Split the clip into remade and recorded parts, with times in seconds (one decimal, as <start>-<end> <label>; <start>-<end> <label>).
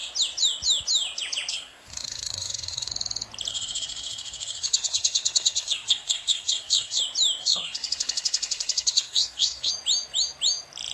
0.0-1.5 recorded; 1.5-2.9 remade; 2.9-3.5 recorded; 3.5-7.0 remade; 7.0-7.4 recorded; 7.4-9.7 remade; 9.7-10.9 recorded